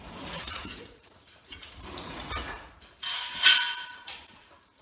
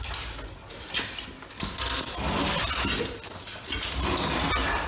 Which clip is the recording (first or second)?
second